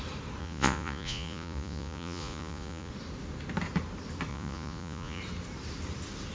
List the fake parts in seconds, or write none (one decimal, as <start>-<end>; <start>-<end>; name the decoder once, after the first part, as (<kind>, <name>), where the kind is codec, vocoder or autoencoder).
0.4-2.9 (vocoder, Vocos); 4.3-5.2

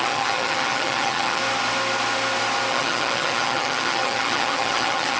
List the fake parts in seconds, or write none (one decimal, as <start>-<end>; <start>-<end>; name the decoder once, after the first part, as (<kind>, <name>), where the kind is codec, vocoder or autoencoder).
0.0-1.4 (vocoder, HiFi-GAN); 2.7-5.2